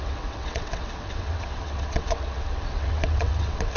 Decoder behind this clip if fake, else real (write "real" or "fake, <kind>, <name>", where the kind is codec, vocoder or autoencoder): fake, vocoder, WaveNeXt